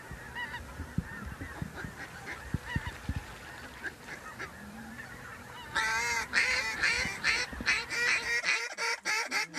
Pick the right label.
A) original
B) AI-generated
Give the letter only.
A